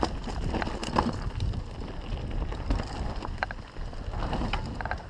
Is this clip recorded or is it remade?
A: recorded